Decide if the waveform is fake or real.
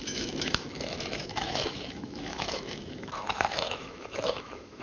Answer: fake